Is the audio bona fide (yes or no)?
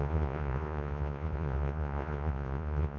no